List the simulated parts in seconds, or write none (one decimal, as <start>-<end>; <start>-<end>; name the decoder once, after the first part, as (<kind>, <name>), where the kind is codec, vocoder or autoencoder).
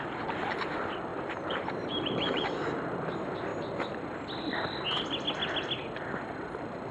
0.0-3.5 (vocoder, BigVGAN v2); 6.5-6.9